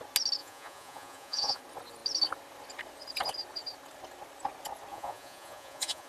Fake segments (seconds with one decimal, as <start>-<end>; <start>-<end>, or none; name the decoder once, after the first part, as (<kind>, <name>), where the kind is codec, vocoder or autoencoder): 0.4-1.6 (vocoder, Vocos); 4.9-6.1

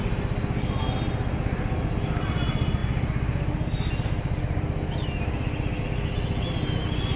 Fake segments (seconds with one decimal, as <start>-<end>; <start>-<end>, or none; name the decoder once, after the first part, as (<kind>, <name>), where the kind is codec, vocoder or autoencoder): none

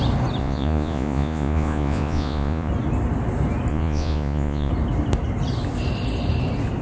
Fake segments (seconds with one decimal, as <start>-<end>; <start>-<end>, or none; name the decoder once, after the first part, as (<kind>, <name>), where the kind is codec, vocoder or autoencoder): 0.4-2.7 (vocoder, Vocos); 3.7-4.7

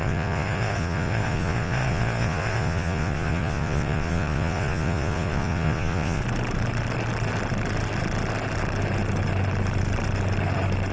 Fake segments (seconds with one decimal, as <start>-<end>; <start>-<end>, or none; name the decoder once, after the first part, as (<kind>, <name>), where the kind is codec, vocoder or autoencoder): 0.0-6.2 (vocoder, Vocos)

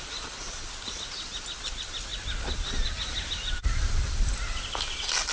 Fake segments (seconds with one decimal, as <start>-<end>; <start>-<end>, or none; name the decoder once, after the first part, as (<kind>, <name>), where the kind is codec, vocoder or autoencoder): none

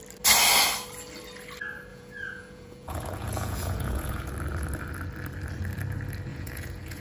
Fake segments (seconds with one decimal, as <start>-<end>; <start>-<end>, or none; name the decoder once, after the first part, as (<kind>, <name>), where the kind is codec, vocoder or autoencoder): 1.9-4.3 (vocoder, Vocos); 6.3-7.0